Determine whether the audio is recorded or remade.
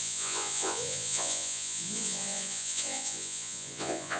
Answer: remade